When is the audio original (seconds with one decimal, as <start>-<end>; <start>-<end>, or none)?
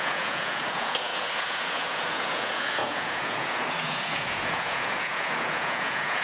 none